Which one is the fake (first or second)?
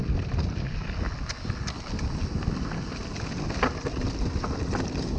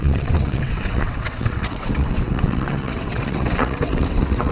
second